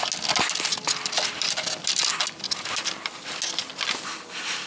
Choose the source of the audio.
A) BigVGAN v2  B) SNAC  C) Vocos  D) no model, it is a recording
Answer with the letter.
D